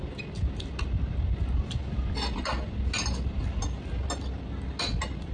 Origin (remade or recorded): recorded